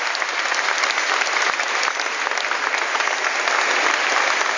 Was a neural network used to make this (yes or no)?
no